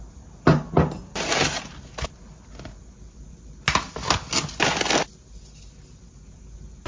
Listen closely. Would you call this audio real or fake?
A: real